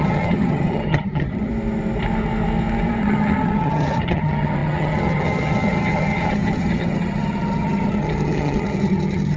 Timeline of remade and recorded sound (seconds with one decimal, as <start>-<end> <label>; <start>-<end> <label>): 0.0-1.5 remade; 1.5-3.0 recorded; 3.0-9.4 remade